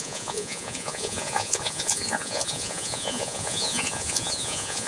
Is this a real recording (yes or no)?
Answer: no